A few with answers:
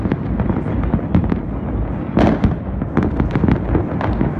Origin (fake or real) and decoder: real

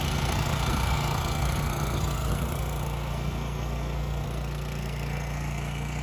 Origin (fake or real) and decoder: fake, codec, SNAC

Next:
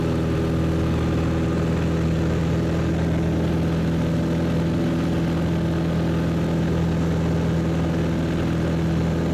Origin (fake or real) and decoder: real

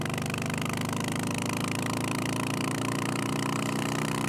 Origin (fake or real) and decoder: real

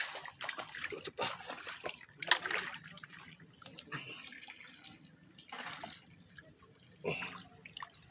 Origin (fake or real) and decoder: real